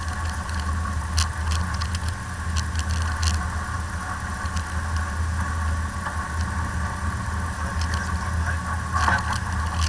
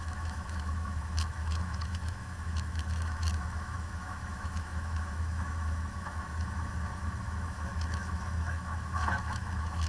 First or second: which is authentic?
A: first